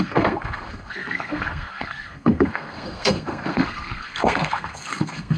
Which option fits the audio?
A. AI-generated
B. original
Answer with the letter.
A